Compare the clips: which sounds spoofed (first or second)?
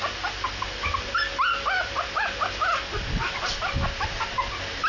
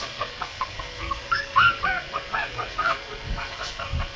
second